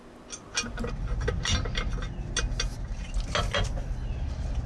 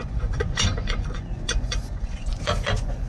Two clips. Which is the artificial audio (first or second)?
second